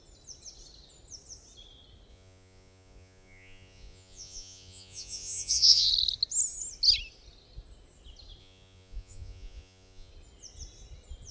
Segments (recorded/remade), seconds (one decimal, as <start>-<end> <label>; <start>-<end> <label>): 0.0-2.1 recorded; 2.1-5.9 remade; 5.9-8.4 recorded; 8.4-10.1 remade; 10.1-11.3 recorded